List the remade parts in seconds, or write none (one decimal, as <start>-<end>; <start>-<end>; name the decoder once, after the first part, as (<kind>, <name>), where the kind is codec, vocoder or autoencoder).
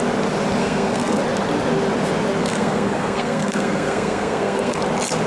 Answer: 0.6-1.2 (codec, SNAC); 2.4-4.8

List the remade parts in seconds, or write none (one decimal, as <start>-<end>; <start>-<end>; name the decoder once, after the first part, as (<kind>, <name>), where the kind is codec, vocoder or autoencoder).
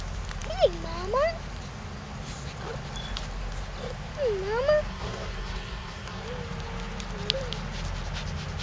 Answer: 4.9-6.2 (codec, SNAC)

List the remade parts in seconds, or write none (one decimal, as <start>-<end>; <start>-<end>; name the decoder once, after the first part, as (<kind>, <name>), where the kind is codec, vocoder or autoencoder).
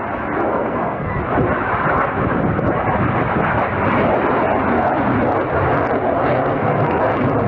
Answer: 0.5-1.1 (codec, SNAC); 6.4-7.0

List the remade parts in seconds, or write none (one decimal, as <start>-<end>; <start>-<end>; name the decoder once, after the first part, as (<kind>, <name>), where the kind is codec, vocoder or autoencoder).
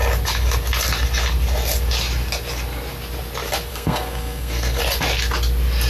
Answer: 3.7-4.8 (codec, SNAC)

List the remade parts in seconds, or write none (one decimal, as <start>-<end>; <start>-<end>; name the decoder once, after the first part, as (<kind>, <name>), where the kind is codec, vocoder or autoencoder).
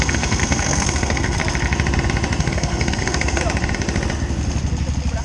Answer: 0.0-1.4 (codec, SNAC); 2.4-3.4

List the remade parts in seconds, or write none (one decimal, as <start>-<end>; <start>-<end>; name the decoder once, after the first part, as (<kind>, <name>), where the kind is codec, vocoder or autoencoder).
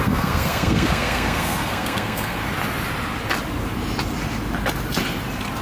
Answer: 0.0-2.4 (codec, SNAC)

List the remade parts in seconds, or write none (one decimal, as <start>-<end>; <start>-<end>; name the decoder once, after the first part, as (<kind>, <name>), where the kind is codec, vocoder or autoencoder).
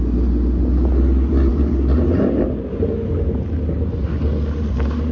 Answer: none